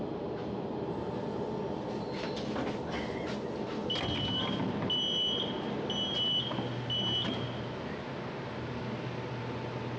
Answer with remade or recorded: recorded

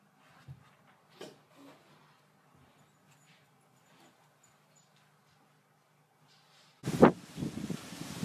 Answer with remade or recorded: recorded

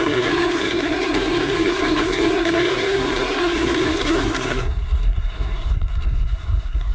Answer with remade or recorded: remade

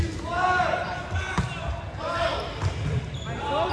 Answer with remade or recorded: recorded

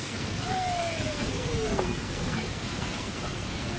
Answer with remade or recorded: remade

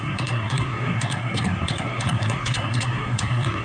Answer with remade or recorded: remade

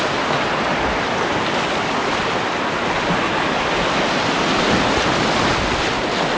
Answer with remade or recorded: recorded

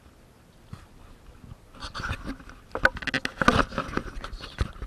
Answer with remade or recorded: recorded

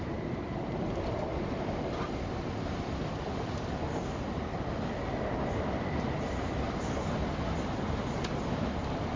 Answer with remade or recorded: recorded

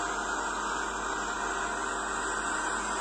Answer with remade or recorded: recorded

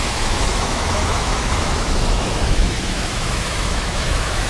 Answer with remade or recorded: remade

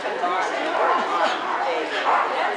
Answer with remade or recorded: recorded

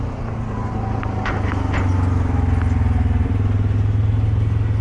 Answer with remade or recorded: recorded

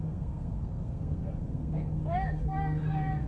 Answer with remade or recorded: remade